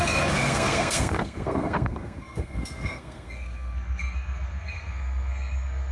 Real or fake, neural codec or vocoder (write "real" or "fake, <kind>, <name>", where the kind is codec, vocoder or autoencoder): fake, codec, SNAC